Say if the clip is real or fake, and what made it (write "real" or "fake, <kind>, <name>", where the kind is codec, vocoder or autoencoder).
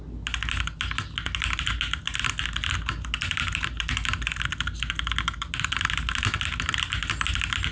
real